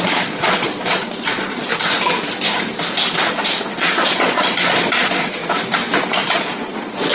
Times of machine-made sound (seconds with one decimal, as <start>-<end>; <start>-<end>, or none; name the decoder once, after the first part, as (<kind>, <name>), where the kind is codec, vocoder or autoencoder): 0.0-1.7 (vocoder, Vocos); 3.3-5.4; 6.3-7.1